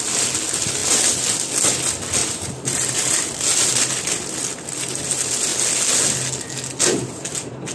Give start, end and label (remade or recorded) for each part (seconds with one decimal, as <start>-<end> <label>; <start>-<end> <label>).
0.0-7.7 recorded